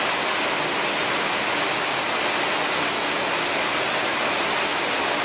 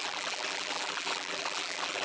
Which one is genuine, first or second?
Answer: first